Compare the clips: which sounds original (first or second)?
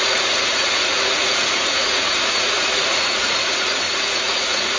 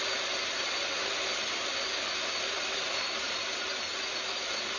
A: second